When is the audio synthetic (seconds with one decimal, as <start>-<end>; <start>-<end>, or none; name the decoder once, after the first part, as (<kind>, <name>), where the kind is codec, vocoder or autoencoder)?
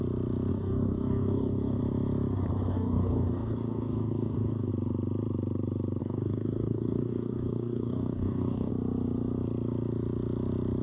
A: 0.5-1.8 (codec, DAC); 2.7-4.7; 6.0-8.7